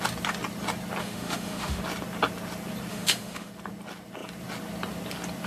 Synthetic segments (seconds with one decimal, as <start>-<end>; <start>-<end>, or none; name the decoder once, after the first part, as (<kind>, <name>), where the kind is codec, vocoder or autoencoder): 1.0-1.8 (autoencoder, DAC-VAE); 2.9-3.5